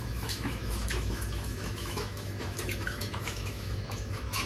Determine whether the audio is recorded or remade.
remade